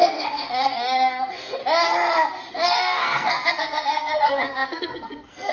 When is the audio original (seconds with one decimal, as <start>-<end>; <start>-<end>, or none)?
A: 1.6-2.5